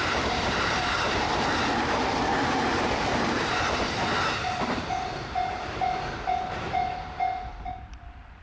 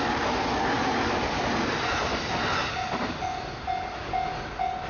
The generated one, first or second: first